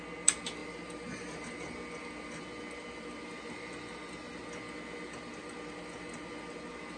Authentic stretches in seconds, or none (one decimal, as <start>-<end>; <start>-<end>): 0.0-7.0